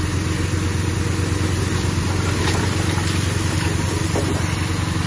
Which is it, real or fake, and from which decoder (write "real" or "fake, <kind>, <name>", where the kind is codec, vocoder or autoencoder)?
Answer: real